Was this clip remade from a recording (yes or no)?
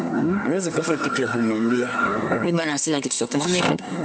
yes